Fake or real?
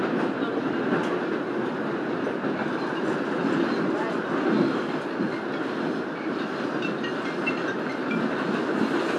real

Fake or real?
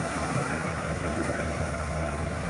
fake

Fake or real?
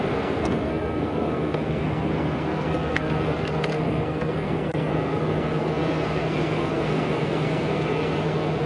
fake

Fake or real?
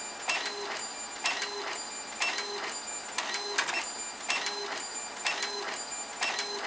real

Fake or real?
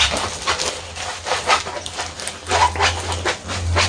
real